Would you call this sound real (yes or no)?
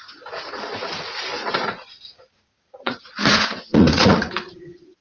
no